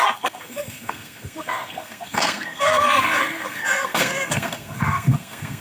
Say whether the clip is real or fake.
fake